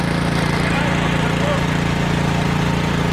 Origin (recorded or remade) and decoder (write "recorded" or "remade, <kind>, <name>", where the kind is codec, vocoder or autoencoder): remade, vocoder, BigVGAN v2